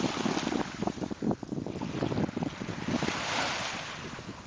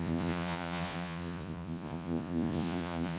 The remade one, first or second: second